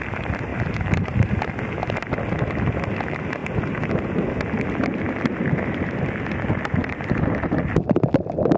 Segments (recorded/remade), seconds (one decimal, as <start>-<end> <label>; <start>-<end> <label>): 0.0-0.5 recorded; 0.5-1.3 remade; 1.3-6.8 recorded; 6.8-7.6 remade; 7.6-8.6 recorded